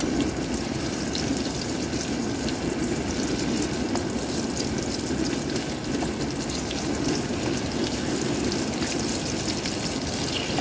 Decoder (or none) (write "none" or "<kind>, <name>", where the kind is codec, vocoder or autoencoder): none